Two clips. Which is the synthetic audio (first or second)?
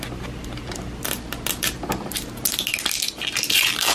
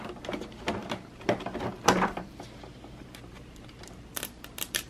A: second